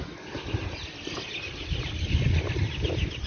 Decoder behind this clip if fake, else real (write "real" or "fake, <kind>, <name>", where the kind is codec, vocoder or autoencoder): real